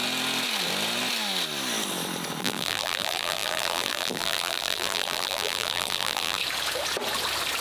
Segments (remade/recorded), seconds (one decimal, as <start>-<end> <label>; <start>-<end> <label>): 0.0-2.4 recorded; 2.4-6.4 remade; 6.4-7.6 recorded